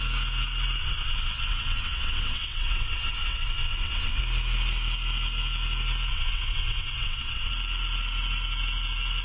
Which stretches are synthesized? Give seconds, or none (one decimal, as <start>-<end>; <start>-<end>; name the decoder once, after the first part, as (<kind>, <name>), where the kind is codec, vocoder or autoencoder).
0.8-4.2 (vocoder, WaveNeXt); 6.1-7.5